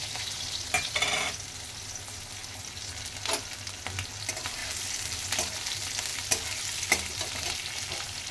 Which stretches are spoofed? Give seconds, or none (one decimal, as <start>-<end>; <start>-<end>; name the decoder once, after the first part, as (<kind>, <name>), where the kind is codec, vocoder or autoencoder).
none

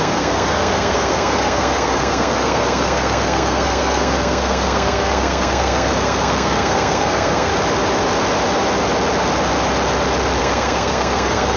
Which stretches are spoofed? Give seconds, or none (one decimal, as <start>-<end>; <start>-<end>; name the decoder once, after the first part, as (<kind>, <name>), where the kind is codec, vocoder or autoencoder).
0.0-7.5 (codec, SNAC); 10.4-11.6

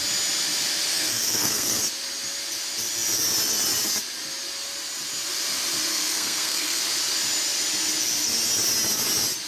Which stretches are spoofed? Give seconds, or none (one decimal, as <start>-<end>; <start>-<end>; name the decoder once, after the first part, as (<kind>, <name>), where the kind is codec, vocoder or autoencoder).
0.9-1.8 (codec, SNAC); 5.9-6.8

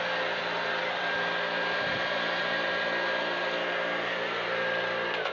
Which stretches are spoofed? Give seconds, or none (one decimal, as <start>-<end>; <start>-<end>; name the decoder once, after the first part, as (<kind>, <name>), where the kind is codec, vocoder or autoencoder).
none